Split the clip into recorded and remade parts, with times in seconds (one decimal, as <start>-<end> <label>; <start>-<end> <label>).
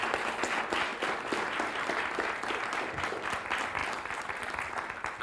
0.0-0.9 recorded; 0.9-1.6 remade; 1.6-5.2 recorded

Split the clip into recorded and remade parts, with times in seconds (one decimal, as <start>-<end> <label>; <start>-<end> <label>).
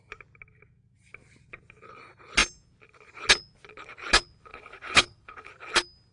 0.0-4.5 recorded; 4.5-5.5 remade; 5.5-6.1 recorded